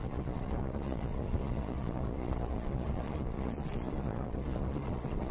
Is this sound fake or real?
fake